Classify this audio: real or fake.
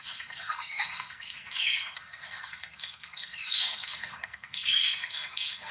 fake